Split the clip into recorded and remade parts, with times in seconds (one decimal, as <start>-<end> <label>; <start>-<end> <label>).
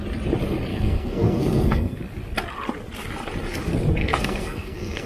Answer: 0.0-0.7 recorded; 0.7-2.0 remade; 2.0-4.0 recorded; 4.0-5.1 remade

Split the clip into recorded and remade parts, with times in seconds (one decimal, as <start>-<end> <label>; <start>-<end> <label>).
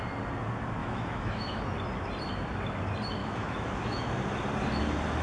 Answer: 0.0-0.8 recorded; 0.8-1.6 remade; 1.6-3.2 recorded; 3.2-4.0 remade; 4.0-5.2 recorded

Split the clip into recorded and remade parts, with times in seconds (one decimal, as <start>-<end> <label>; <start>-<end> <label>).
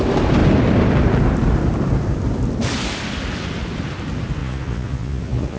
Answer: 0.0-4.4 recorded; 4.4-5.6 remade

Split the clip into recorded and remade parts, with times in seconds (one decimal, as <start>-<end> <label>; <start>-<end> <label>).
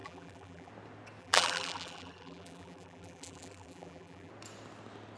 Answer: 0.0-0.7 remade; 0.7-1.2 recorded; 1.2-4.3 remade; 4.3-5.2 recorded